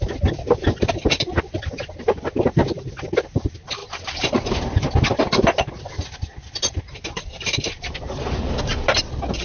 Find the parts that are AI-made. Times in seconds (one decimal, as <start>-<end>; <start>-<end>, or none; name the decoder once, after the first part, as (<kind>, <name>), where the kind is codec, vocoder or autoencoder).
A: none